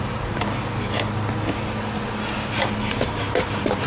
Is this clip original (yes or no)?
yes